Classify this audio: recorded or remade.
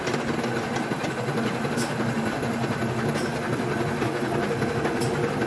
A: recorded